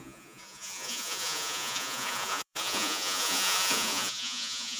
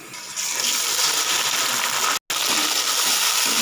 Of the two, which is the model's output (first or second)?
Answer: first